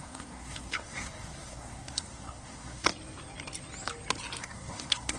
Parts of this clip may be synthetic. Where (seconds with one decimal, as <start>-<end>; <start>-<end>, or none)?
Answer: 0.0-2.9; 4.4-5.2